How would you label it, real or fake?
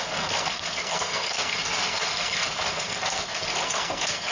fake